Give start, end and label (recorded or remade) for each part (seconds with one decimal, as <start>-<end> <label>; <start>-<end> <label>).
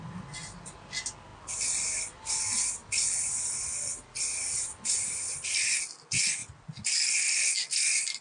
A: 0.0-8.2 recorded